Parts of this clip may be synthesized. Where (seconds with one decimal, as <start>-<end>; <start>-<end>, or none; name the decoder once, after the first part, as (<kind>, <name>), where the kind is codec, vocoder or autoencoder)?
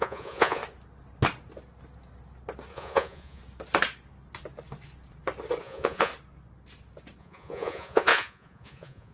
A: 0.0-0.6 (vocoder, Vocos); 2.7-3.4; 5.6-6.1; 7.2-9.1